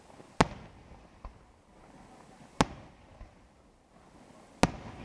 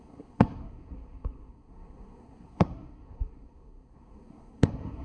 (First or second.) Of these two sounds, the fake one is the second